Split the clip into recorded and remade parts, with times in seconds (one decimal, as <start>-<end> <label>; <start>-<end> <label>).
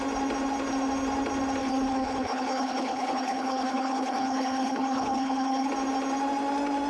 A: 0.0-1.6 recorded; 1.6-5.7 remade; 5.7-6.9 recorded